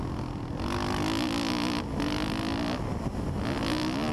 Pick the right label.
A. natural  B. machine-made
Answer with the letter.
A